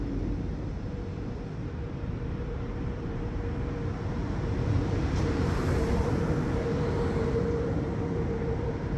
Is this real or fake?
fake